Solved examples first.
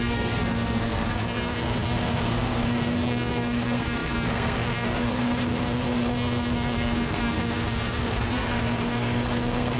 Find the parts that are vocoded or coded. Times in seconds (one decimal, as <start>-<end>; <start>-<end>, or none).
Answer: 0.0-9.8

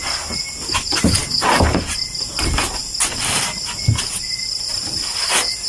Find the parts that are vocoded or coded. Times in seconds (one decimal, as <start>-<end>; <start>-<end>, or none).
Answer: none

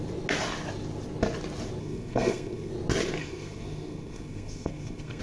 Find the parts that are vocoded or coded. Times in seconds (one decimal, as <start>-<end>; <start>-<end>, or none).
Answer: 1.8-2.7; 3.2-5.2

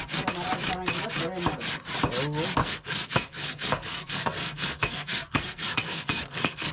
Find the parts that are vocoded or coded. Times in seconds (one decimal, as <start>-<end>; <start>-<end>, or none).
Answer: 2.6-6.7

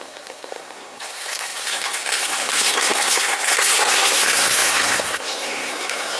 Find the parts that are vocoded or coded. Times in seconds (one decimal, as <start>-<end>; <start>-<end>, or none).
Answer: 0.0-6.2

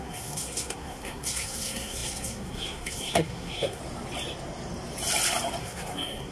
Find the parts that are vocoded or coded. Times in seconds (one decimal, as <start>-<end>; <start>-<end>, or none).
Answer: 0.0-3.8; 5.6-6.3

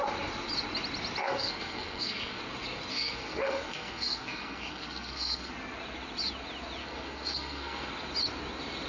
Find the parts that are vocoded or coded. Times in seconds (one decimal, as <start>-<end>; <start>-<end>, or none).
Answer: 1.2-2.4; 2.9-5.5; 6.8-7.9